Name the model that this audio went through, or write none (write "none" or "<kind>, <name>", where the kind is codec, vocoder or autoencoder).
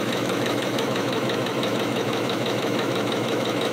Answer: autoencoder, DAC-VAE